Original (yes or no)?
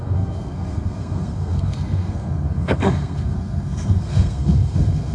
no